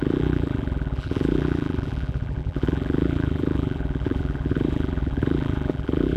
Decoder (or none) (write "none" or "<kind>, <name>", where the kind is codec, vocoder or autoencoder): vocoder, BigVGAN v2